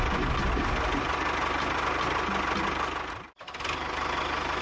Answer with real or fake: real